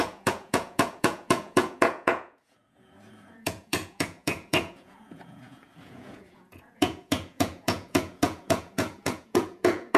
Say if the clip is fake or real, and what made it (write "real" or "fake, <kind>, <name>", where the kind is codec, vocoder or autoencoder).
fake, vocoder, Vocos